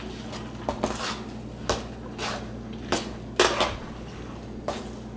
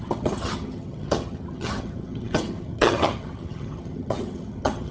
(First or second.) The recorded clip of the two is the first